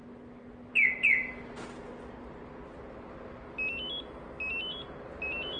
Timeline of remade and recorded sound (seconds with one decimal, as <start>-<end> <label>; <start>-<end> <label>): 0.0-5.6 recorded